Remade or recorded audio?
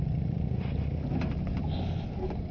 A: recorded